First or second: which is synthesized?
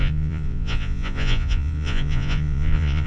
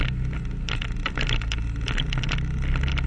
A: first